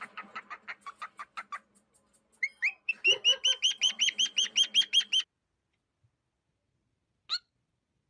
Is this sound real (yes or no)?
yes